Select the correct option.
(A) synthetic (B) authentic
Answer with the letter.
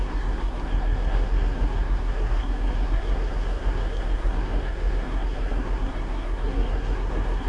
A